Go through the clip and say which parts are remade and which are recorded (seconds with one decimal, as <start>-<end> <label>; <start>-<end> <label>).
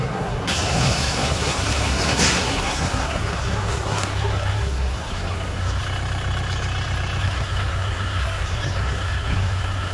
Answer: 0.0-5.8 remade; 5.8-7.2 recorded; 7.2-9.9 remade